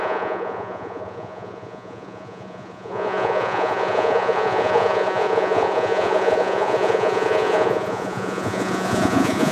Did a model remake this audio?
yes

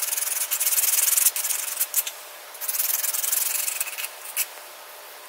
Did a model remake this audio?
no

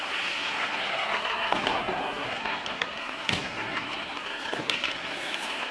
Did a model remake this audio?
yes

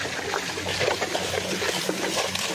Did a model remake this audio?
yes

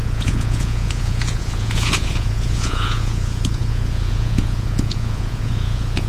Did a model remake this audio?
yes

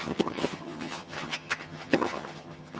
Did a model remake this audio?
yes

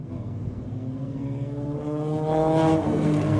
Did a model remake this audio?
yes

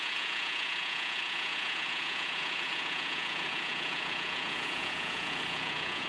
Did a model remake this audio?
yes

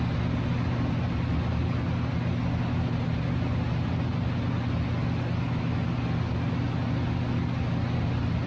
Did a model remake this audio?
no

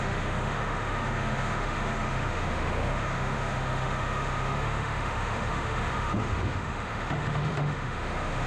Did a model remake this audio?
yes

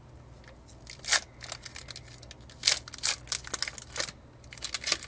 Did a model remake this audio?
no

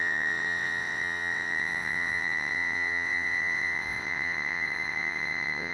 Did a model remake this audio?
yes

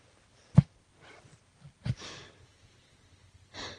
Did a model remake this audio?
no